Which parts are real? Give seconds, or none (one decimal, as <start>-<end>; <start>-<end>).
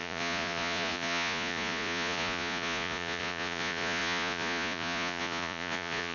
none